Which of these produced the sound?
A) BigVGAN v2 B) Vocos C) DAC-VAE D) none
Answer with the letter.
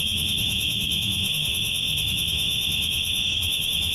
C